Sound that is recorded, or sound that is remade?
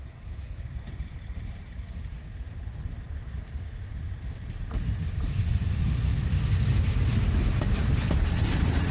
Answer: recorded